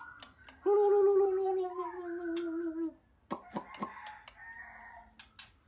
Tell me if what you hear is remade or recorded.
recorded